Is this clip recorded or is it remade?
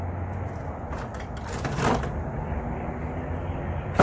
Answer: recorded